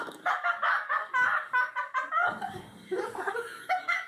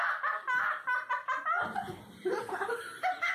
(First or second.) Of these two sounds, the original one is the second